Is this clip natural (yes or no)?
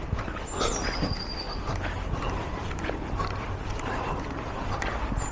yes